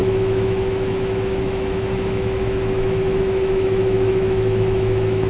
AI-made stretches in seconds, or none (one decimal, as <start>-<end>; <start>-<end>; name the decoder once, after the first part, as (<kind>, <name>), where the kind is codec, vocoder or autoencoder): 0.0-5.3 (autoencoder, DAC-VAE)